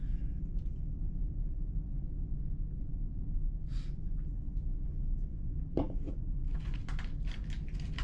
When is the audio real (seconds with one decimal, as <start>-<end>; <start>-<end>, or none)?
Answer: 0.0-5.3; 6.8-8.0